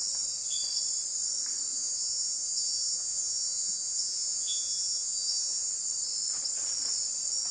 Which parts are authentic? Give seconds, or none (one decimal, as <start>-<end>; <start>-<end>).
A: 0.0-1.7; 5.7-7.5